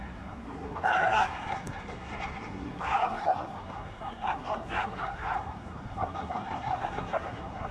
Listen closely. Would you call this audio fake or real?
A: fake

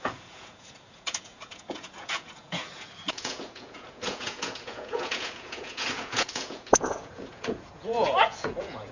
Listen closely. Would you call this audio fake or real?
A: fake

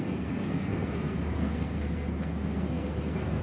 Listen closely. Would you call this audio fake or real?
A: fake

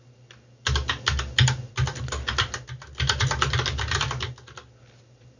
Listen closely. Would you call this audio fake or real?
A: real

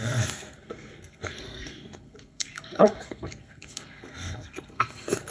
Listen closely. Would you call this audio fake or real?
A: fake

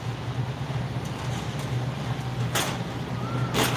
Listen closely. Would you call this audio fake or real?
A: real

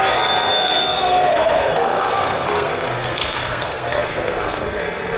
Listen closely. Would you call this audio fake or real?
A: fake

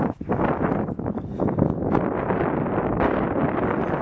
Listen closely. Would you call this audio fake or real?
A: real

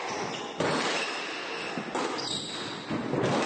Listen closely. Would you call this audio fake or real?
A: real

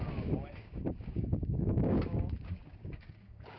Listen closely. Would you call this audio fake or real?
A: fake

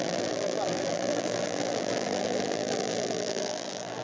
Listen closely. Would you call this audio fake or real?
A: fake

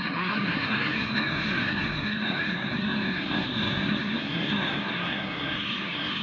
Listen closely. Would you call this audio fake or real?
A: fake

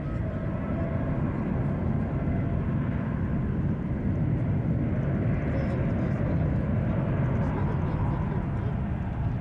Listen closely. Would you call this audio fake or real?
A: real